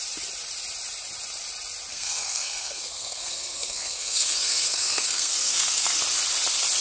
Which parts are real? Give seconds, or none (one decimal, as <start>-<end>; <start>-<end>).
0.0-1.9; 6.0-6.8